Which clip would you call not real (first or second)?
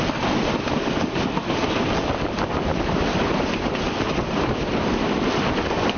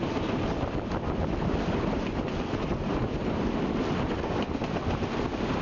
first